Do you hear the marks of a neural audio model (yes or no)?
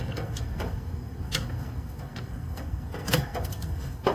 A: yes